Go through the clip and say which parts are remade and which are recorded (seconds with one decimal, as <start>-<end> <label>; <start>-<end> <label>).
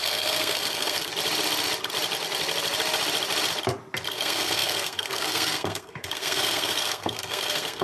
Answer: 0.0-1.1 remade; 1.1-4.1 recorded; 4.1-7.8 remade